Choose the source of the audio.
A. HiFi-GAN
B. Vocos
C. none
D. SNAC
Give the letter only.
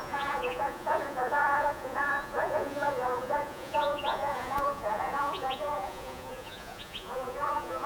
B